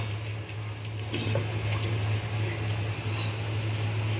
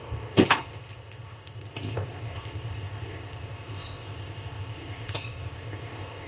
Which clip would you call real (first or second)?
first